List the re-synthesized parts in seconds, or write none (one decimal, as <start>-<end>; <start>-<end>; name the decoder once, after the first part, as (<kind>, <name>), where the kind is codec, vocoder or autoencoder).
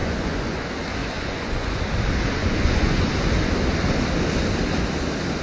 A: 0.0-0.6 (vocoder, Vocos); 1.0-1.8; 2.4-3.1